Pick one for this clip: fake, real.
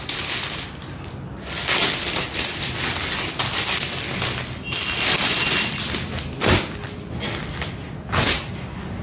real